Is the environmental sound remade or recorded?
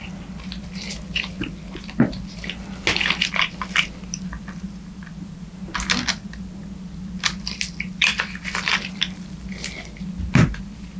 recorded